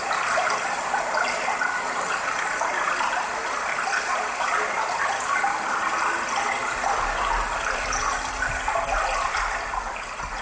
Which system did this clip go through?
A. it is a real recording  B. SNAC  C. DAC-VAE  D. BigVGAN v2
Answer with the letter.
A